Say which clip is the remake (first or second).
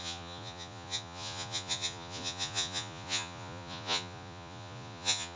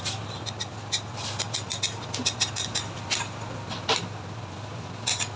first